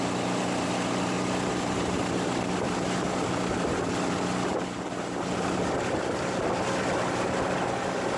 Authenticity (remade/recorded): recorded